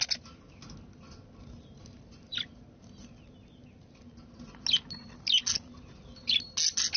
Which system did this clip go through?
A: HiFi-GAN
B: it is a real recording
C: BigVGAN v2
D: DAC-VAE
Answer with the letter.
B